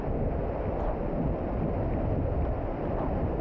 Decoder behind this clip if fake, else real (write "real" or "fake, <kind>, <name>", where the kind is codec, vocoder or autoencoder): real